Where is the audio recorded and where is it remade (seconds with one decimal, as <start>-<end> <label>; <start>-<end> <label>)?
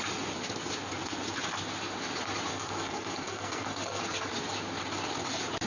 0.0-2.5 recorded; 2.5-4.0 remade; 4.0-5.7 recorded